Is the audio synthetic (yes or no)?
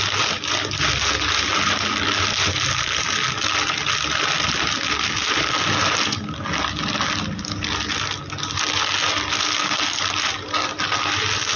no